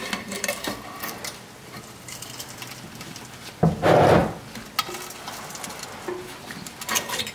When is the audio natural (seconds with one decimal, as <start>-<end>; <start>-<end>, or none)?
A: 3.4-7.3